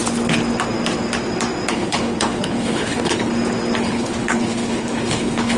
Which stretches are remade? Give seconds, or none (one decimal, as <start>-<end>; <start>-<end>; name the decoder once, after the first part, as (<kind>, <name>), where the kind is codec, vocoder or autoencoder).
1.7-3.3 (codec, HILCodec); 3.8-5.6